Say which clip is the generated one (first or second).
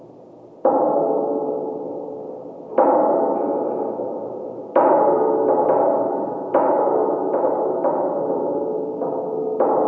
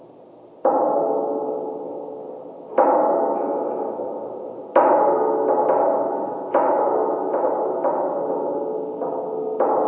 first